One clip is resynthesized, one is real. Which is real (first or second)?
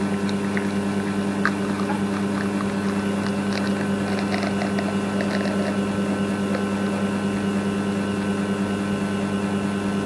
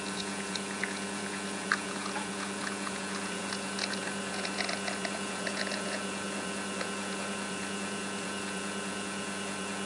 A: first